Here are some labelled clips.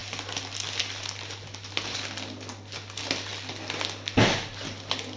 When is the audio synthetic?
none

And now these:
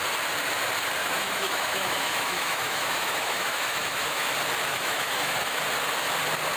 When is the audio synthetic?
1.0-4.3 (autoencoder, DAC-VAE); 4.7-5.6

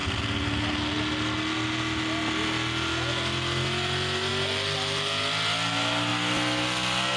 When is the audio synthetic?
none

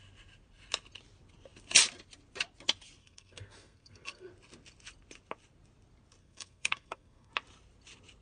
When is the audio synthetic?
3.0-4.3 (codec, SNAC); 6.2-7.3

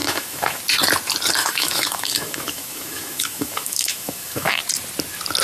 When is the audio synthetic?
0.0-0.6 (autoencoder, DAC-VAE); 1.4-4.6

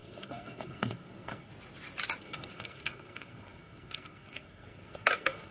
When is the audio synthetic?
0.0-1.5 (codec, SNAC); 2.2-5.5